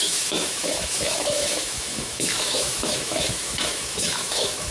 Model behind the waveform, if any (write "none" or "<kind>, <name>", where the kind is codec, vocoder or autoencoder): autoencoder, DAC-VAE